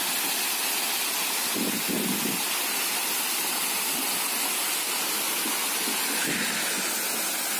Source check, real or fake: real